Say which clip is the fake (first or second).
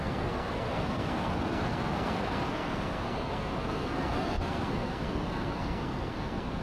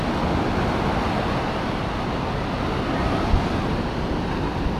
first